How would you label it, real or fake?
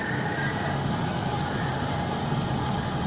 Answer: real